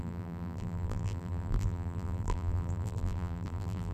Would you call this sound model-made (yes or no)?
yes